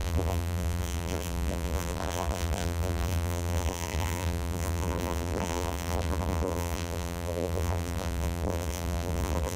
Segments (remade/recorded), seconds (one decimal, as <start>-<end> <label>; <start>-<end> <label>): 0.0-9.6 remade